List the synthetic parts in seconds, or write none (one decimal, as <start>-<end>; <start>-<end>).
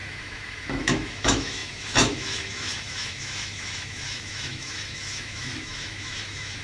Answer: 0.0-6.6